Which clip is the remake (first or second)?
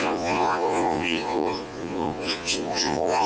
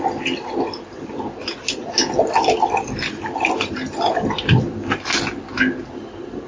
first